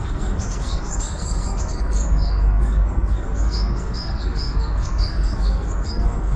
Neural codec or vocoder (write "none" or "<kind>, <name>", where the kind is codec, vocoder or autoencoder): codec, SNAC